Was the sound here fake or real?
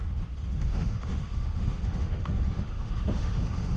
fake